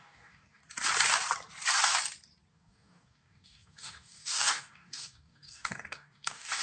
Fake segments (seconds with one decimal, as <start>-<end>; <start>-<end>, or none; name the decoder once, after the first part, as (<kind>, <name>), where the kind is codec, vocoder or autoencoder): 0.0-0.6 (codec, DAC); 2.5-6.6